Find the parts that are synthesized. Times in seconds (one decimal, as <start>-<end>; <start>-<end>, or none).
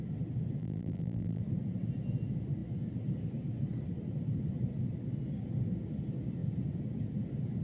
0.6-1.4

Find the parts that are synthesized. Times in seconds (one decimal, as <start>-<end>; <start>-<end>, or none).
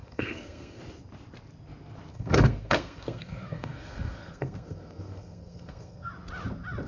0.0-0.8; 2.1-6.1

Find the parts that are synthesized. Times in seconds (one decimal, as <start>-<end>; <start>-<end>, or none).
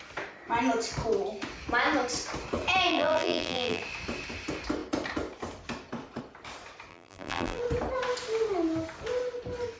2.9-3.8; 6.9-7.6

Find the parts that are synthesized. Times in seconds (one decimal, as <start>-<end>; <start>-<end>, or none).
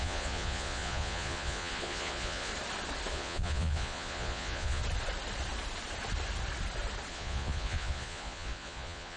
0.0-2.5; 3.1-4.8; 7.1-9.2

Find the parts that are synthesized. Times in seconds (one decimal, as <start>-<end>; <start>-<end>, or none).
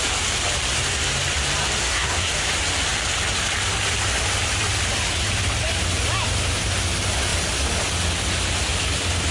1.8-2.3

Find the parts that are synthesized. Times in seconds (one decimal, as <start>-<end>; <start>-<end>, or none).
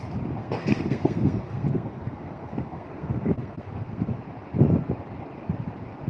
0.4-4.1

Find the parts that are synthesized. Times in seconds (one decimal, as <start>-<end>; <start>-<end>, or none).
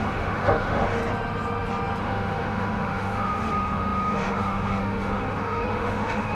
0.0-1.0; 2.0-6.3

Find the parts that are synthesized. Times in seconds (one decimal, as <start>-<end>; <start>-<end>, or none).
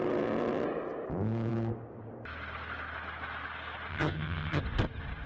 3.9-4.6